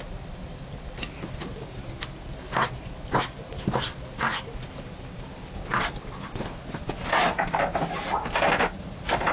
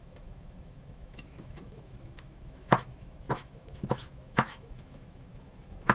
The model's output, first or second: second